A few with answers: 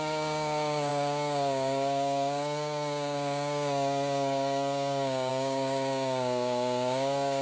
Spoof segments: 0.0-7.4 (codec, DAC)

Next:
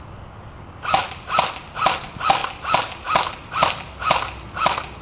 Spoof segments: none

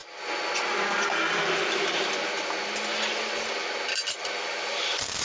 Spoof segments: none

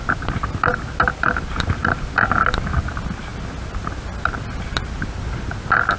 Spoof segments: none

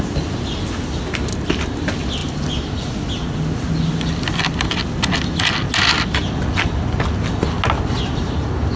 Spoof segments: none

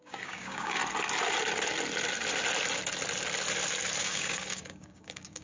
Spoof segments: 0.0-0.8 (codec, DAC); 4.0-5.4

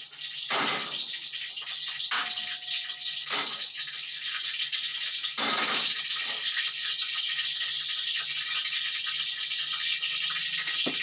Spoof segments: none

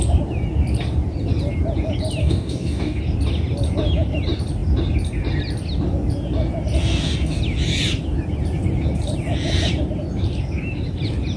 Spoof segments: 2.2-3.0 (codec, DAC); 6.8-7.4